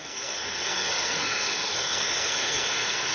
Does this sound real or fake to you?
fake